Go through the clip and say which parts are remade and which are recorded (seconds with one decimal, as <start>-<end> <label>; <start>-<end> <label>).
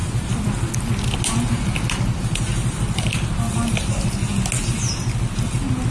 0.0-5.9 recorded